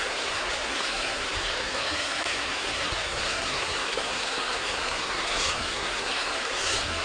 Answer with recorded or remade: remade